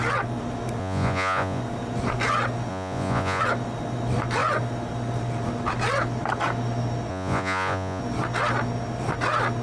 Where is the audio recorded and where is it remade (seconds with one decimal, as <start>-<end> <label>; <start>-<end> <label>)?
0.0-0.8 recorded; 0.8-1.6 remade; 1.6-2.7 recorded; 2.7-3.4 remade; 3.4-7.1 recorded; 7.1-8.0 remade; 8.0-9.6 recorded